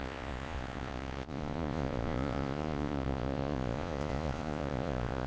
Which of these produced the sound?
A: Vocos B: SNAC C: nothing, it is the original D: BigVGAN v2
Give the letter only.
A